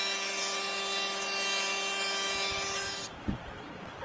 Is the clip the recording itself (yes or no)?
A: yes